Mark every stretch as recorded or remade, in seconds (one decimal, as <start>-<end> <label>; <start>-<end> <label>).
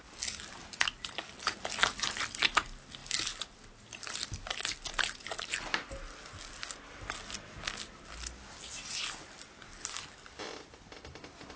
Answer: 0.0-11.6 recorded